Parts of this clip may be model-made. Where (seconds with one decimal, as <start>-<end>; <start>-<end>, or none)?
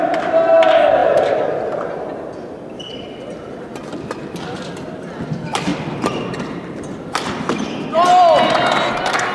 none